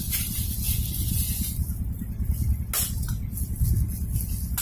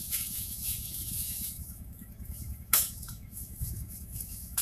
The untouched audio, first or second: first